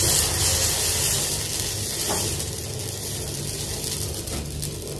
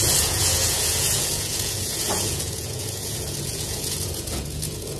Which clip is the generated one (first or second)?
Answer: second